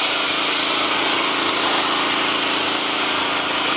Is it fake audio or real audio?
real